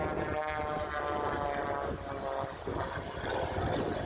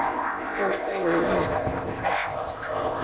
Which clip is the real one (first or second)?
first